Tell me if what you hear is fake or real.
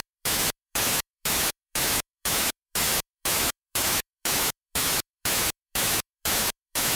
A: fake